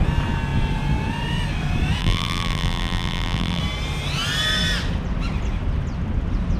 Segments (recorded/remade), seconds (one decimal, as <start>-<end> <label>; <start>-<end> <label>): 0.0-2.0 recorded; 2.0-3.6 remade; 3.6-6.6 recorded